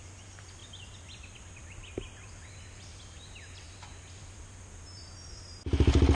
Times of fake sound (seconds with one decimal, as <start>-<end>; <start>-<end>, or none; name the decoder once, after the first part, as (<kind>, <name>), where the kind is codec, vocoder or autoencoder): none

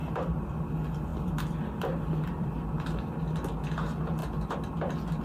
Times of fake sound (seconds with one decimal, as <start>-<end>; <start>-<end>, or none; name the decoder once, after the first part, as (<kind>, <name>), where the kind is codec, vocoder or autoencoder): 0.0-0.6 (vocoder, BigVGAN v2); 1.1-3.1

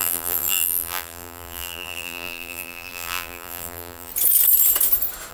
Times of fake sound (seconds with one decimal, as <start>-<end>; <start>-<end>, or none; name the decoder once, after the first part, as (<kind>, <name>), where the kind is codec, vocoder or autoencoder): 0.0-4.1 (vocoder, BigVGAN v2)

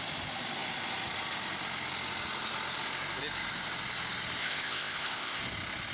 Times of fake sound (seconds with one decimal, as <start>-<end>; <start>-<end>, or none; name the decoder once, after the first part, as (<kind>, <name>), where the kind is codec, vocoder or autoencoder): 4.4-5.4 (codec, ZipCodec)